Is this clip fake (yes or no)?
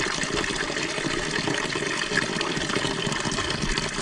no